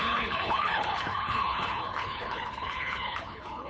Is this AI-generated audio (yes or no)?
yes